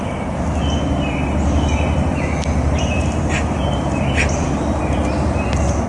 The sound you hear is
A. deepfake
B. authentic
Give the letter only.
B